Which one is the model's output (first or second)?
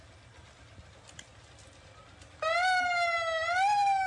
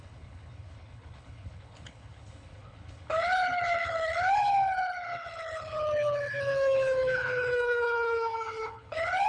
second